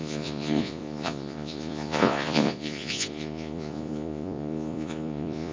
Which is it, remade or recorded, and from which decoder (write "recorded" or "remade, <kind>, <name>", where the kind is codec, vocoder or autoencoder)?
remade, vocoder, Vocos